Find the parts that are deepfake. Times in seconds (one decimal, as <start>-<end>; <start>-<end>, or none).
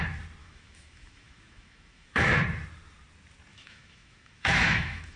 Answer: 0.4-2.4; 3.5-5.2